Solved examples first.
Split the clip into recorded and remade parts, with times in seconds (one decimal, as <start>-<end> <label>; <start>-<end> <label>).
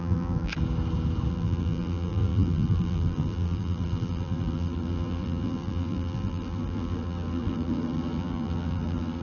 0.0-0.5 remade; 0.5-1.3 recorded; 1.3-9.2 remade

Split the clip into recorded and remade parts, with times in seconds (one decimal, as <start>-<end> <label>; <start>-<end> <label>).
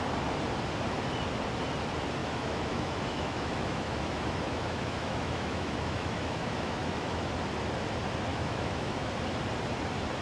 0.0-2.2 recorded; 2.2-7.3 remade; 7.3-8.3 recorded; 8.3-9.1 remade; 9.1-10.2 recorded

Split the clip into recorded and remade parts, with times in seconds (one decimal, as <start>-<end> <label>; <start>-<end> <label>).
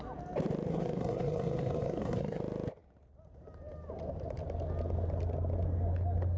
0.0-0.7 recorded; 0.7-2.4 remade; 2.4-6.4 recorded